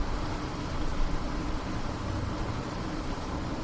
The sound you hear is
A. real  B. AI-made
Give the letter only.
B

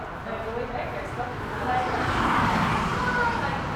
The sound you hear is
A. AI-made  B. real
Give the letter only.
B